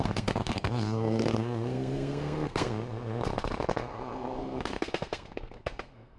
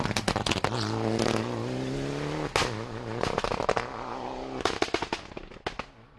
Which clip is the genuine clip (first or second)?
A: second